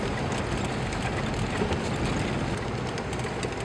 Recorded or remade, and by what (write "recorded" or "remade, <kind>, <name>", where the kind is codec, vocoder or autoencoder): recorded